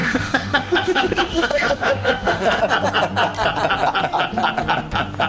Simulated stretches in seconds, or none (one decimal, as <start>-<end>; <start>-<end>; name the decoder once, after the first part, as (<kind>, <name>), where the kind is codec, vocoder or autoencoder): 0.0-2.6 (autoencoder, DAC-VAE)